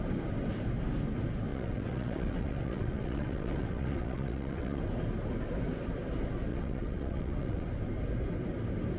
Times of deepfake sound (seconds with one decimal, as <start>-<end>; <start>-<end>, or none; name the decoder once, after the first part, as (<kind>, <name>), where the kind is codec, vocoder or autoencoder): 1.5-4.8 (vocoder, WaveNeXt); 6.5-7.7